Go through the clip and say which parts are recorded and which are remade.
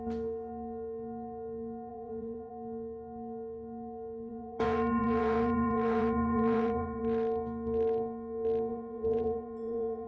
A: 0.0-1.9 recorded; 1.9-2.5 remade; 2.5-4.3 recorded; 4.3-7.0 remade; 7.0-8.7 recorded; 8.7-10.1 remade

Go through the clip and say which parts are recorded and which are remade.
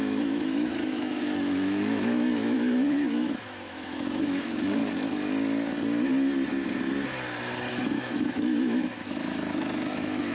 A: 0.0-4.8 remade; 4.8-7.7 recorded; 7.7-10.3 remade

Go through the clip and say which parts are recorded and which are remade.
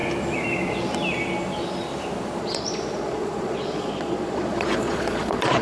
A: 0.0-2.4 recorded; 2.4-5.6 remade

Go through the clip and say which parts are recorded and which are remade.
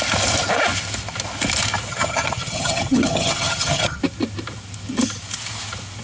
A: 0.0-1.9 recorded; 1.9-4.0 remade; 4.0-6.0 recorded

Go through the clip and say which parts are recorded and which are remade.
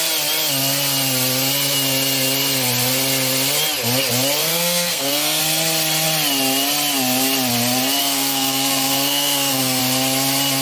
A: 0.0-4.4 recorded; 4.4-5.4 remade; 5.4-8.0 recorded; 8.0-9.8 remade; 9.8-10.6 recorded